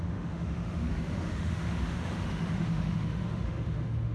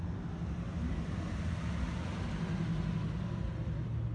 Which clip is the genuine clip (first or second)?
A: second